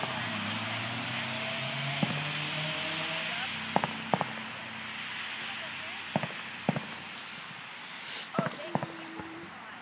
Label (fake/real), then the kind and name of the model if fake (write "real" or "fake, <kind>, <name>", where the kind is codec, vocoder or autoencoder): real